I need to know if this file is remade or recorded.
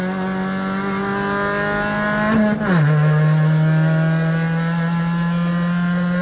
recorded